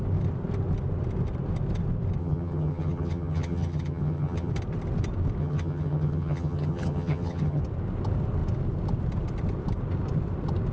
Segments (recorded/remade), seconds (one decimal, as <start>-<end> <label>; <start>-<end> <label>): 0.0-2.2 recorded; 2.2-4.5 remade; 4.5-5.4 recorded; 5.4-7.6 remade; 7.6-10.7 recorded